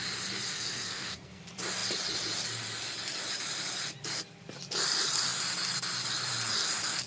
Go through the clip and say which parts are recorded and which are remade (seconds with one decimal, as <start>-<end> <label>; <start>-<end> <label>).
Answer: 0.0-0.5 recorded; 0.5-1.4 remade; 1.4-7.1 recorded